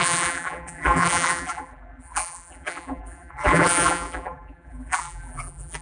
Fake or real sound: fake